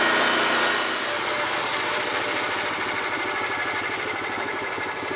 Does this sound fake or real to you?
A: real